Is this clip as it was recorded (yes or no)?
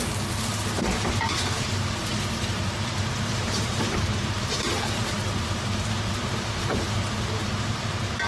no